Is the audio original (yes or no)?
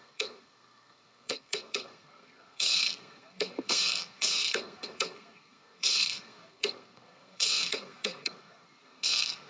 no